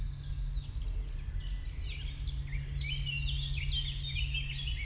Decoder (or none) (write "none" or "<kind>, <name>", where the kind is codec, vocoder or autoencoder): none